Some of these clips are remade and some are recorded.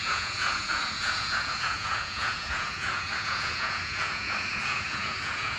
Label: remade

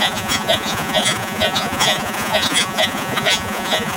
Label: remade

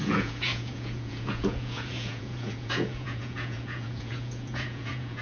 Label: remade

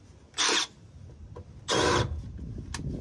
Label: recorded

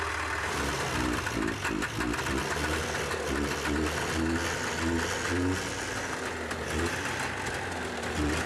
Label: recorded